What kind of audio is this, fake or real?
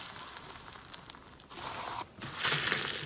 real